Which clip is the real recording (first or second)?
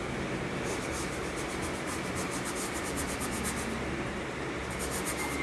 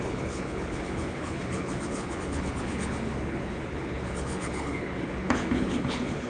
first